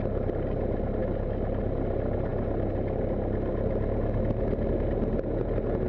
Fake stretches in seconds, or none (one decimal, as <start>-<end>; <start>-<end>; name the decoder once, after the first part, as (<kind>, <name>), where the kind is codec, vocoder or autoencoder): none